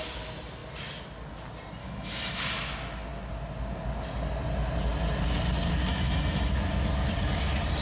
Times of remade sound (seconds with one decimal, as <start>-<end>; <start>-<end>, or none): 1.8-2.4; 5.9-6.5